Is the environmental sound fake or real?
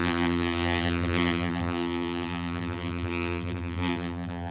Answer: fake